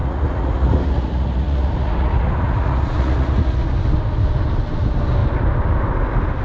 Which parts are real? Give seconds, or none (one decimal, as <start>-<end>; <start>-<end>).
3.8-6.4